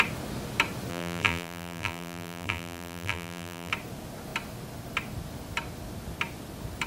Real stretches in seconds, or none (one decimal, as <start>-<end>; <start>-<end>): 0.0-0.9; 3.7-6.9